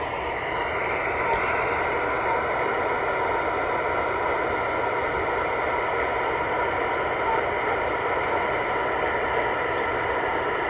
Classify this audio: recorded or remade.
recorded